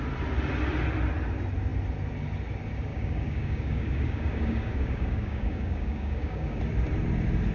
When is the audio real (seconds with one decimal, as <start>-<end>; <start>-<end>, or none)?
0.0-2.9; 6.6-7.5